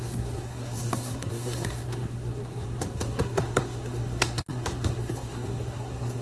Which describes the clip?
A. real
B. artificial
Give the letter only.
B